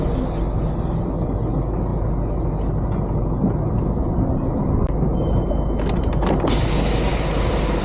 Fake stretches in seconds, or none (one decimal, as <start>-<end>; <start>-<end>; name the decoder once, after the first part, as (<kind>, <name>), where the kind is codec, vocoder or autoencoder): none